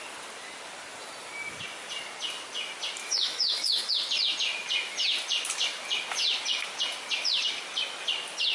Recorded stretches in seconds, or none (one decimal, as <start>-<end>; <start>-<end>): 0.0-3.0; 3.9-8.5